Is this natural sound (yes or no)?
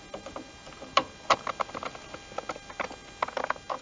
yes